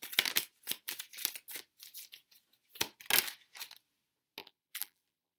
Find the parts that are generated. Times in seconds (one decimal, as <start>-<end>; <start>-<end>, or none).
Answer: 4.4-5.4